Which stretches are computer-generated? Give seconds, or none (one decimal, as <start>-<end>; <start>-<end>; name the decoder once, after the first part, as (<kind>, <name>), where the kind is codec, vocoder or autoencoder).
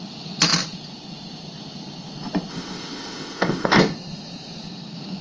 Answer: 2.5-3.8 (codec, ZipCodec)